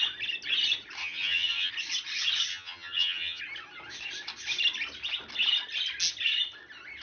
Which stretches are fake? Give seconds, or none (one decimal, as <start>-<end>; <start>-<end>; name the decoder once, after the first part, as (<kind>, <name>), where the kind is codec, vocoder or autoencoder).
1.0-1.7 (vocoder, HiFi-GAN); 2.5-3.4